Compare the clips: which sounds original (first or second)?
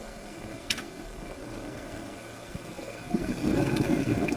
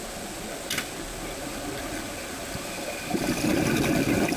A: second